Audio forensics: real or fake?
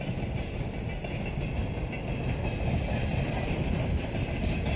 real